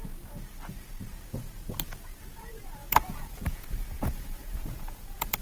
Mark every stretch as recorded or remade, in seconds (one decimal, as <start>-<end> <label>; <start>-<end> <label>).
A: 0.0-2.8 recorded; 2.8-5.4 remade